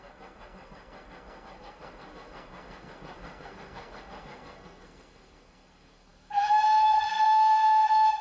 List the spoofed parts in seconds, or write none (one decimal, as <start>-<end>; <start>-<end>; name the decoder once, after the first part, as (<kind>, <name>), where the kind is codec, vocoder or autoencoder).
0.0-8.2 (codec, SNAC)